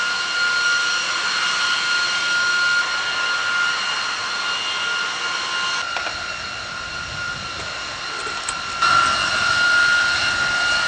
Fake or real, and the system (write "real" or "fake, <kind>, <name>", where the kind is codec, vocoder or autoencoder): real